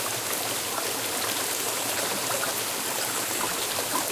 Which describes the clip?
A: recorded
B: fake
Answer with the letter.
A